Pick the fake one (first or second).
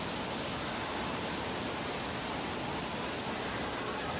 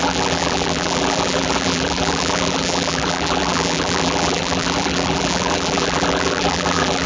second